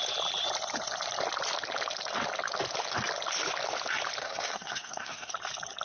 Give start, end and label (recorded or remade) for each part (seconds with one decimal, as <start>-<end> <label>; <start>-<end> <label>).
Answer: 0.0-4.2 recorded; 4.2-5.3 remade; 5.3-5.8 recorded